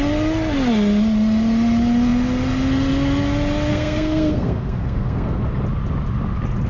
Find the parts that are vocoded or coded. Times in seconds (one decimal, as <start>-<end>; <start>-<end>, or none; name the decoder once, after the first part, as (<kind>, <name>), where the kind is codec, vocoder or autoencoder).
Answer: 3.7-5.4 (codec, SNAC)